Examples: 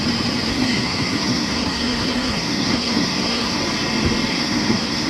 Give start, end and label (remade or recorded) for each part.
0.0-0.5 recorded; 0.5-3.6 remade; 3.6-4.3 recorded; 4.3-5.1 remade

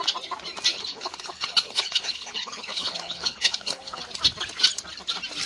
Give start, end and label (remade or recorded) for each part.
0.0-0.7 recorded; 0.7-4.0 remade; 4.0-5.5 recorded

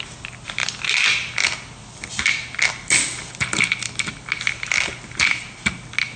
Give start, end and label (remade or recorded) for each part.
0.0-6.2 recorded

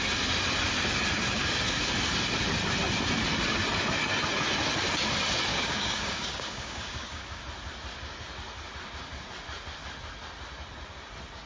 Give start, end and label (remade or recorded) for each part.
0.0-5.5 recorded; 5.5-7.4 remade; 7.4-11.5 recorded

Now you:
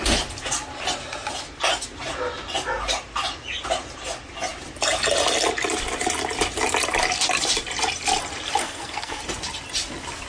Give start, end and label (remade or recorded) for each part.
0.0-8.6 recorded; 8.6-9.2 remade; 9.2-10.3 recorded

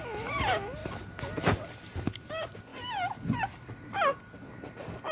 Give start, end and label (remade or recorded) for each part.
0.0-5.1 recorded

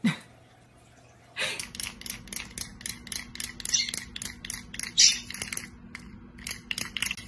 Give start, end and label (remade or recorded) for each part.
0.0-7.3 recorded